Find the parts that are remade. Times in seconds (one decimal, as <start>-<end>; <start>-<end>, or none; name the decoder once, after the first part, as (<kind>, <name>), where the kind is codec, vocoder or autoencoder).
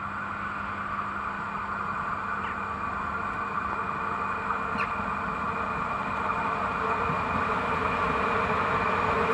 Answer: none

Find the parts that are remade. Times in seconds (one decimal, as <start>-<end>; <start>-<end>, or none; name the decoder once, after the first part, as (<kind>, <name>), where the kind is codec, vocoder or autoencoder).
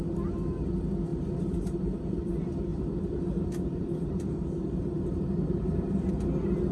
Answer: 1.1-2.3 (vocoder, BigVGAN v2); 2.7-6.1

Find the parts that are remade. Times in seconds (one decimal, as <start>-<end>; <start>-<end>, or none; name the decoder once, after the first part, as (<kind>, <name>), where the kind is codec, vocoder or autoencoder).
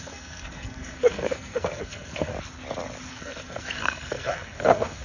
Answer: 0.0-2.3 (codec, SNAC); 3.1-5.0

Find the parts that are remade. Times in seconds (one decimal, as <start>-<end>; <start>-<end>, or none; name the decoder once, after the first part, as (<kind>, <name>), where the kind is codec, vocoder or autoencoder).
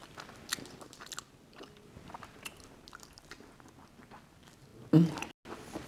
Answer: none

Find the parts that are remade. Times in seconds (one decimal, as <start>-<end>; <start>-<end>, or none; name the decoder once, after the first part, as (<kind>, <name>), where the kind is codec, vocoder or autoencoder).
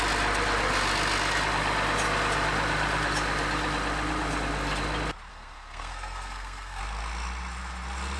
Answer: 5.3-6.8 (codec, SNAC)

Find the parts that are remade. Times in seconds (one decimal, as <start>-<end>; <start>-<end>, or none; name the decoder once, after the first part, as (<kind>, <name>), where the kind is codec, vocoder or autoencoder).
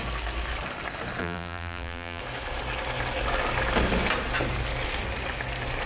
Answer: 1.2-2.2 (vocoder, BigVGAN v2)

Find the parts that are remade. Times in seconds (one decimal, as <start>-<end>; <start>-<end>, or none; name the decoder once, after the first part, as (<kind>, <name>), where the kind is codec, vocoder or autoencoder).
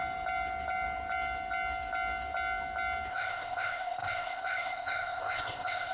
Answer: 3.1-5.9 (codec, ZipCodec)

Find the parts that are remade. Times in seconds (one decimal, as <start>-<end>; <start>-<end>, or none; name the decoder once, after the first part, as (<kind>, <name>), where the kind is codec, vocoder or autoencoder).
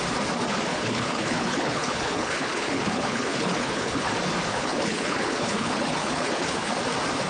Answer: 0.7-4.1 (codec, HILCodec); 4.5-6.7